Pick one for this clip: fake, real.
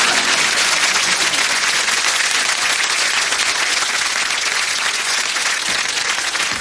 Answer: fake